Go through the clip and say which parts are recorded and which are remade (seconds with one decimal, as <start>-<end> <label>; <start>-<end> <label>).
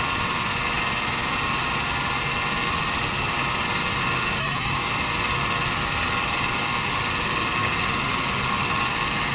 0.0-4.4 recorded; 4.4-4.9 remade; 4.9-9.3 recorded